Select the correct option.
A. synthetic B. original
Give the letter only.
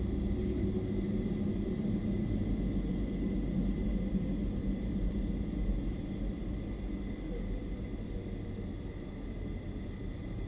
B